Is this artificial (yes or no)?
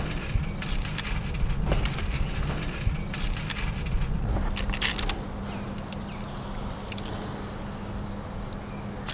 no